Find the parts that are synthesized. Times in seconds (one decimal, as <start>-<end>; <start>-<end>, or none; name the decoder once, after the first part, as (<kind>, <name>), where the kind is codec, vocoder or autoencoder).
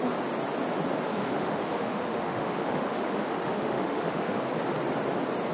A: 1.1-4.4 (autoencoder, DAC-VAE)